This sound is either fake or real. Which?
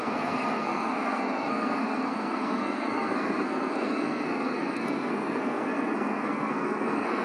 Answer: fake